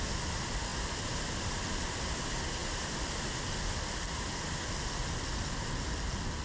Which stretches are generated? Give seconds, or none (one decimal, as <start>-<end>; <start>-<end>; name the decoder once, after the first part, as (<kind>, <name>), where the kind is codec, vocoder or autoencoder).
none